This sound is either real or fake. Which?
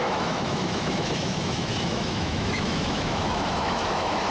fake